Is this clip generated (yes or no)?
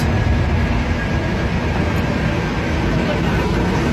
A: no